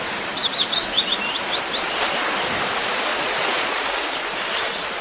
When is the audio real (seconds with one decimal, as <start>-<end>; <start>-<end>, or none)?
0.0-3.1; 4.1-5.0